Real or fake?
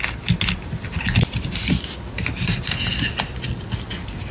real